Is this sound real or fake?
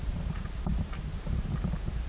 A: fake